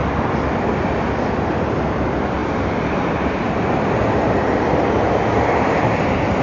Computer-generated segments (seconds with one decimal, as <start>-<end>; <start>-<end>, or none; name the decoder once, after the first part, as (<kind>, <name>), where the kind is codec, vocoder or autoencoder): 0.0-0.7 (vocoder, BigVGAN v2); 2.4-3.3